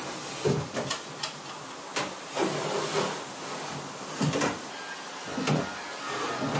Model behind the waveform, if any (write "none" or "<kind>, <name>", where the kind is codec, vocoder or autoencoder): none